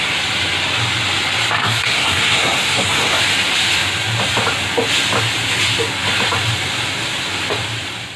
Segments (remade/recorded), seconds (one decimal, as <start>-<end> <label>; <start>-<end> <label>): 0.0-1.6 recorded; 1.6-3.2 remade; 3.2-8.2 recorded